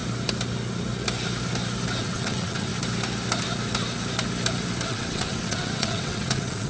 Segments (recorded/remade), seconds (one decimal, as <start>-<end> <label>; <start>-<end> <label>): 0.0-2.0 recorded; 2.0-2.7 remade; 2.7-4.9 recorded; 4.9-6.7 remade